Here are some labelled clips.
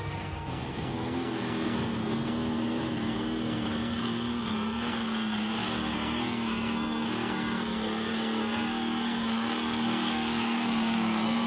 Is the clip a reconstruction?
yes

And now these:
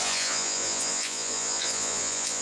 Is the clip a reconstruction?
yes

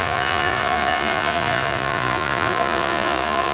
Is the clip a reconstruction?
yes